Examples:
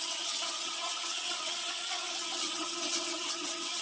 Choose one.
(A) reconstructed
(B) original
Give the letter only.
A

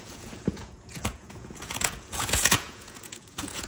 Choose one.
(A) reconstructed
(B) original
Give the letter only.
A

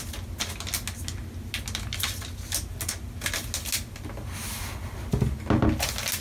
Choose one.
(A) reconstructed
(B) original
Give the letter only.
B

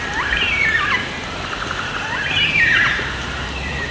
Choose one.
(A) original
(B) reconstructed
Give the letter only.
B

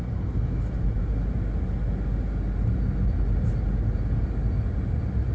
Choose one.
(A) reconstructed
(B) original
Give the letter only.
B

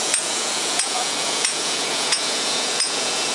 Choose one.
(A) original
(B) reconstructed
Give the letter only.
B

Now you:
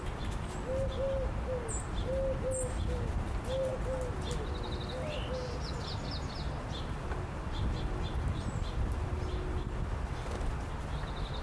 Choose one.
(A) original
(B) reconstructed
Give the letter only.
A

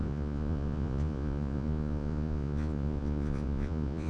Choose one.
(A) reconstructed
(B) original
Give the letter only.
A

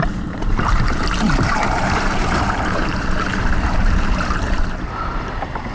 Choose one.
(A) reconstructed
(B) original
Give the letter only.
A